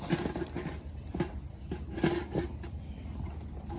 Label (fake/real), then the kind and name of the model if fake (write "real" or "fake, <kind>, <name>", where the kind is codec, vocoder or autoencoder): real